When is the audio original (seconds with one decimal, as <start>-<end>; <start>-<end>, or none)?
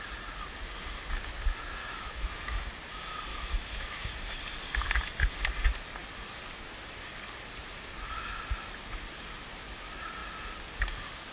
0.0-1.8; 2.7-3.3; 4.1-11.3